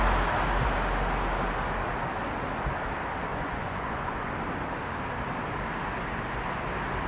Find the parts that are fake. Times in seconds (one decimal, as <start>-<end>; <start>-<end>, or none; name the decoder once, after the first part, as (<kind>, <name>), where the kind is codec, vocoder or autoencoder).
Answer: 3.3-4.3 (vocoder, Vocos)